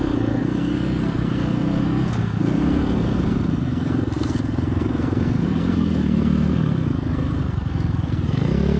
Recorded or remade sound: remade